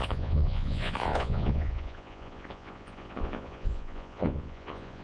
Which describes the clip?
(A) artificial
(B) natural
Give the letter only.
A